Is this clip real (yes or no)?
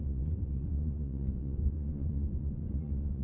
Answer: no